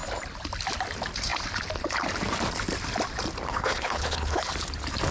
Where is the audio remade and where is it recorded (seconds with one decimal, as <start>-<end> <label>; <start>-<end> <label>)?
0.0-3.5 recorded; 3.5-4.5 remade; 4.5-5.1 recorded